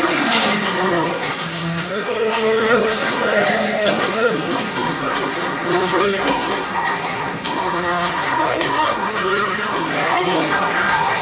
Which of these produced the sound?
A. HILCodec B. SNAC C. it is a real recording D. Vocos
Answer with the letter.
B